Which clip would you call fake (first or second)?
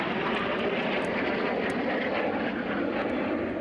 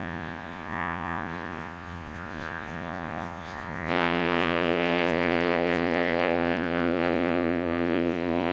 second